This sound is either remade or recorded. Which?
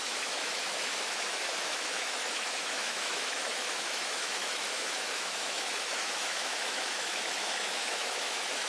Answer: remade